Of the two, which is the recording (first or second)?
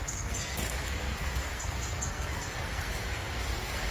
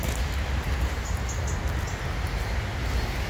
second